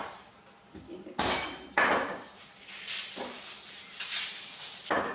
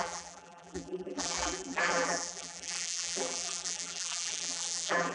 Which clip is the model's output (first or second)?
second